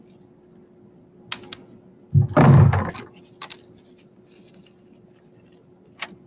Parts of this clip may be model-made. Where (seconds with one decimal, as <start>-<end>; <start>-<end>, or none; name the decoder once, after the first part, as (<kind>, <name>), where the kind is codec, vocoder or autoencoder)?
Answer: none